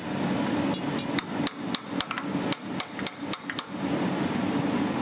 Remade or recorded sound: recorded